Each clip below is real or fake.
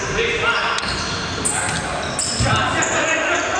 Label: real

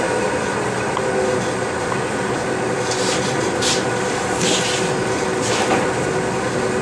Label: real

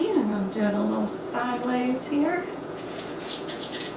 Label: fake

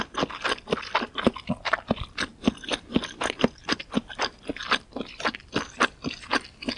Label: real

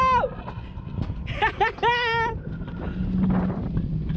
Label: real